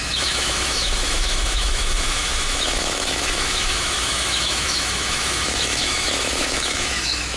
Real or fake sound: fake